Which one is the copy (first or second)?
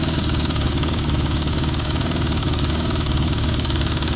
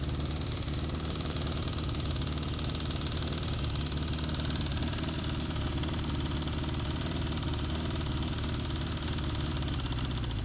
first